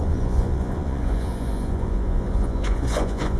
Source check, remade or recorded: remade